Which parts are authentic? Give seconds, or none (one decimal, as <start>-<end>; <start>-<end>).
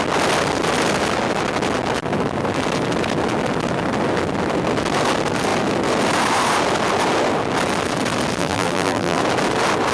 0.0-8.4; 9.2-9.9